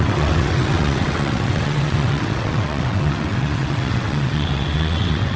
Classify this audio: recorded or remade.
remade